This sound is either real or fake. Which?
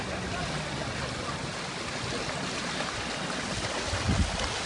real